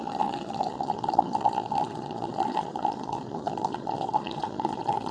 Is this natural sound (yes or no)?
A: no